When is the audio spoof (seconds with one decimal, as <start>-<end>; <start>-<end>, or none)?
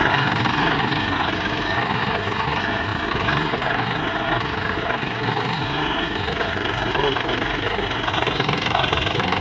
0.0-9.4